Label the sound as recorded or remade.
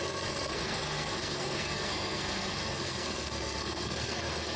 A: remade